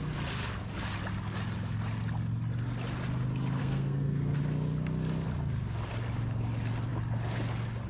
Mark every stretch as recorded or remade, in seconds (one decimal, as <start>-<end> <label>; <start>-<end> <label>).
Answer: 0.0-3.6 recorded; 3.6-4.4 remade; 4.4-7.9 recorded